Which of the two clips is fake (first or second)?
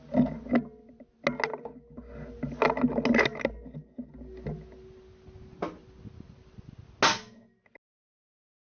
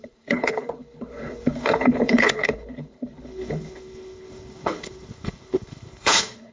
second